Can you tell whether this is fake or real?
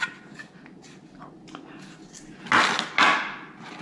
real